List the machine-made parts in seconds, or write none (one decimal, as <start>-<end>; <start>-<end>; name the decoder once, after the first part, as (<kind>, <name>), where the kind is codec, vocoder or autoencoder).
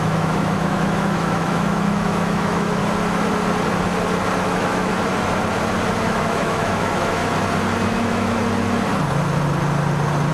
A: 0.0-2.8 (autoencoder, DAC-VAE); 4.4-4.9; 6.0-7.2; 7.9-8.4